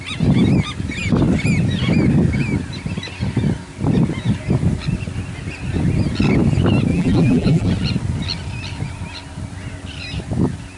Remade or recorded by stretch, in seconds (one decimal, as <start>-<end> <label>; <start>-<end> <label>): 0.0-6.9 recorded; 6.9-7.7 remade; 7.7-10.8 recorded